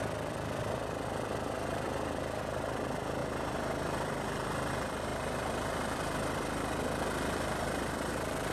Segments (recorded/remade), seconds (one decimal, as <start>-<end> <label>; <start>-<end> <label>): 0.0-8.5 remade